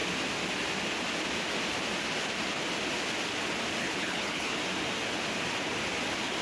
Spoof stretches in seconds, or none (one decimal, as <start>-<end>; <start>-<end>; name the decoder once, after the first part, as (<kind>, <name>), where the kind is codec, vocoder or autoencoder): 3.8-4.6 (codec, HILCodec)